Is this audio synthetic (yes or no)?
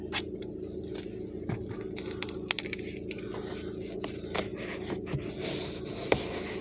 no